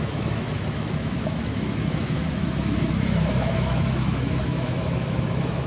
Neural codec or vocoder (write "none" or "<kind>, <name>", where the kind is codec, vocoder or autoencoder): autoencoder, DAC-VAE